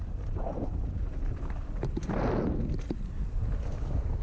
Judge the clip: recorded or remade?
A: recorded